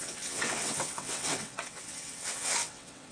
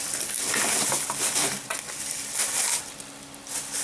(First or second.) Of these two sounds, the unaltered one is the second